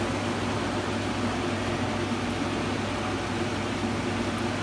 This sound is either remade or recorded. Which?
recorded